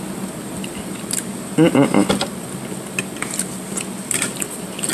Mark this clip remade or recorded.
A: recorded